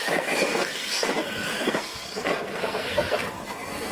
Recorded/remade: remade